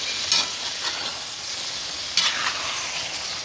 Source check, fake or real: real